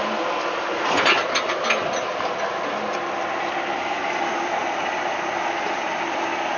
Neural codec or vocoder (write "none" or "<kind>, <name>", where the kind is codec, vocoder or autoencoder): none